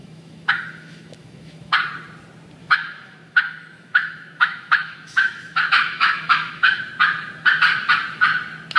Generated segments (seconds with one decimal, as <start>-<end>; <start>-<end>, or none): 0.0-1.7; 2.6-6.8